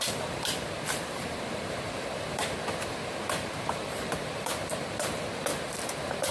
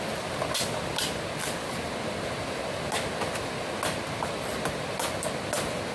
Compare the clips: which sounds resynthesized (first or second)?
first